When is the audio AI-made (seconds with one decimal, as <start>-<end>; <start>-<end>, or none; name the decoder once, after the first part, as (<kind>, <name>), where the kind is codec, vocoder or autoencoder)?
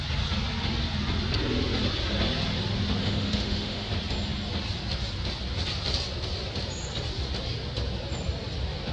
3.0-3.9 (autoencoder, DAC-VAE)